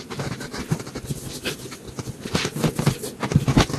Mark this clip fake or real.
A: real